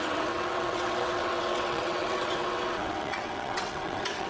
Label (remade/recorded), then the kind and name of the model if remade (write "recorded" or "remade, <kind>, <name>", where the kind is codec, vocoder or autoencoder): remade, vocoder, WaveNeXt